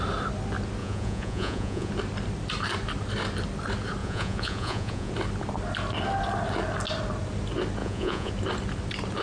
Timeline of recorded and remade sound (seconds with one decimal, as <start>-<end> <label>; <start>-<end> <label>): 0.0-0.8 recorded; 0.8-1.9 remade; 1.9-4.0 recorded; 4.0-5.1 remade; 5.1-7.8 recorded; 7.8-8.3 remade; 8.3-9.2 recorded